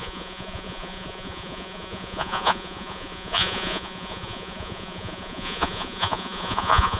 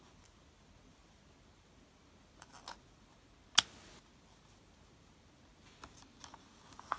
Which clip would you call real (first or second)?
second